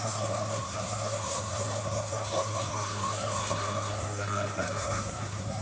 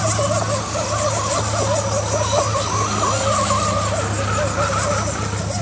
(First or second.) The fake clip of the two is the first